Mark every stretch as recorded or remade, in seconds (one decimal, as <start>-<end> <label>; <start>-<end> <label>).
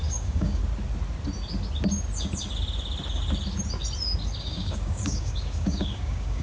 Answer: 0.0-0.6 remade; 0.6-4.4 recorded; 4.4-6.4 remade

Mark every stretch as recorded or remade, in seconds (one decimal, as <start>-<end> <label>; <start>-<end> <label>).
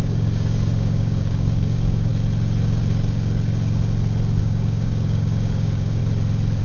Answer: 0.0-2.1 remade; 2.1-4.4 recorded; 4.4-6.0 remade; 6.0-6.6 recorded